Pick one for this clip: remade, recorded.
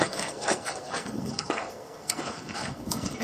remade